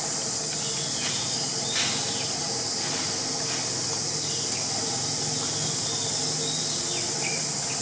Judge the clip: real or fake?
real